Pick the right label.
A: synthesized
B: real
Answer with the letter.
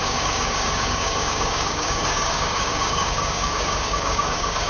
A